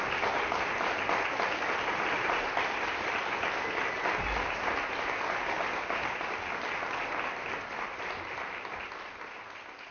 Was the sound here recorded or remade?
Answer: recorded